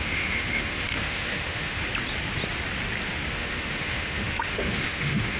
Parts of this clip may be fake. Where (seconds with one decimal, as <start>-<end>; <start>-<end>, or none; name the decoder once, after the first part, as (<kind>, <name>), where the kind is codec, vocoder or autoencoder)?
0.0-1.8 (autoencoder, DAC-VAE); 3.3-5.4